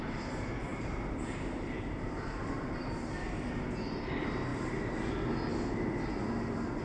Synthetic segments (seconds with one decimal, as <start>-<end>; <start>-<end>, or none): 0.7-3.5; 4.5-5.1

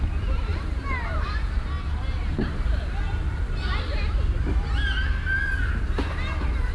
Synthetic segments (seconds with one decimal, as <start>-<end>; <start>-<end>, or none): 0.5-1.6; 2.2-3.8

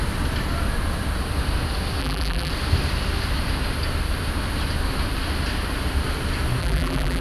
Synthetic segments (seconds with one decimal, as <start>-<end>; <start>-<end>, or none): 2.0-2.5; 6.6-7.2